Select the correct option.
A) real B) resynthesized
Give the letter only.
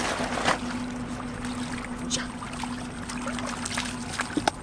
A